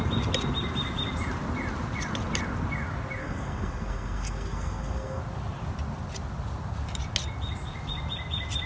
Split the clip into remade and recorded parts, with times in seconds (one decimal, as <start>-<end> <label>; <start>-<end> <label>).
0.0-3.2 recorded; 3.2-5.2 remade; 5.2-8.7 recorded